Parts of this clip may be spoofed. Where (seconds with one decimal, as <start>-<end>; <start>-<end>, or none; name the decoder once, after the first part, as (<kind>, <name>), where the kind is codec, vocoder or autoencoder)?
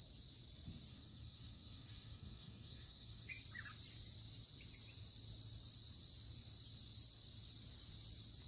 0.9-3.3 (codec, DAC)